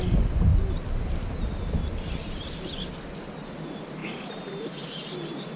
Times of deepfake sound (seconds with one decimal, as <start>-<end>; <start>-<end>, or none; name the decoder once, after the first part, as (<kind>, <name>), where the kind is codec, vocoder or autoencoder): none